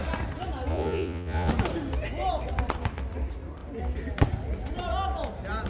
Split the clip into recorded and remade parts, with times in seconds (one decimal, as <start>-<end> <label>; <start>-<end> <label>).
0.0-0.7 recorded; 0.7-1.5 remade; 1.5-5.7 recorded